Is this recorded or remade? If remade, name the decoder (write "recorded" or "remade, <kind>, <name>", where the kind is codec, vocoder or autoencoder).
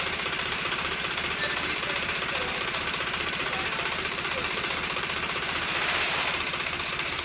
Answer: remade, vocoder, BigVGAN v2